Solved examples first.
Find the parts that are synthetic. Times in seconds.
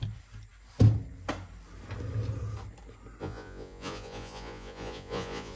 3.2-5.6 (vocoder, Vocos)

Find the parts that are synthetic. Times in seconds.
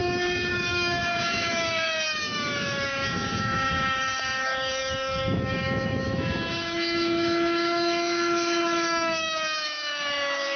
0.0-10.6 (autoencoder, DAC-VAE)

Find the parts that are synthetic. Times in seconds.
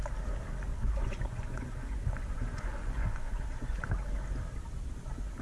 0.7-3.9 (vocoder, Vocos)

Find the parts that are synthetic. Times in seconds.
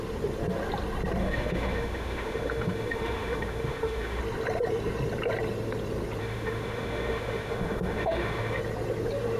1.2-4.2 (autoencoder, DAC-VAE); 6.2-8.6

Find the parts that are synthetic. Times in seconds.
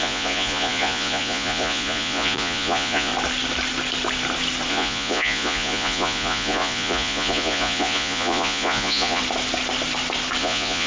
0.0-3.1 (vocoder, Vocos); 4.7-9.2; 10.4-10.9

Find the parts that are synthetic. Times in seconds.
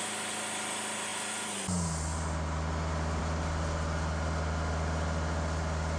none